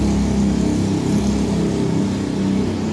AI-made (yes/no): no